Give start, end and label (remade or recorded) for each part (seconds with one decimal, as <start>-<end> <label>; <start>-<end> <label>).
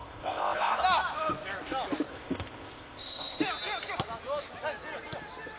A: 0.0-0.8 remade; 0.8-2.1 recorded; 2.1-3.4 remade; 3.4-5.6 recorded